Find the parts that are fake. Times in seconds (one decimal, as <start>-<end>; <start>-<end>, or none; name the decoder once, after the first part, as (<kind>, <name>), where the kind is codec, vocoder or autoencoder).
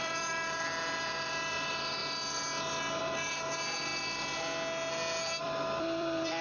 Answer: 0.0-2.0 (vocoder, BigVGAN v2); 3.0-3.9; 5.4-6.4